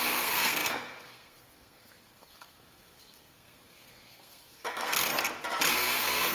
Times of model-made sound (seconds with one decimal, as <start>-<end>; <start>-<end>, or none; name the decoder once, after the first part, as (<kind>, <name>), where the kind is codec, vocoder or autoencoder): 0.0-5.1 (codec, SNAC); 5.7-6.3